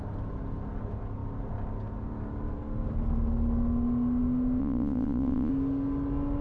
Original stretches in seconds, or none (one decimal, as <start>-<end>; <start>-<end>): 0.0-4.6; 5.5-6.4